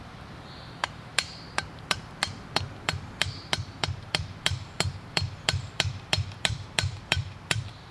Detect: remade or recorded remade